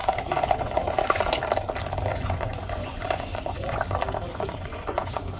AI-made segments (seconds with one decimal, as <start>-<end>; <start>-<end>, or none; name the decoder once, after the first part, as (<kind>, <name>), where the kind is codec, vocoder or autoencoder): 0.0-1.4 (vocoder, Vocos); 2.1-3.8; 4.3-5.4